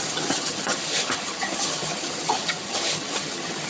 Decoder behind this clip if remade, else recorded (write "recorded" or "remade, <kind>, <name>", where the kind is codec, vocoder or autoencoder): remade, vocoder, HiFi-GAN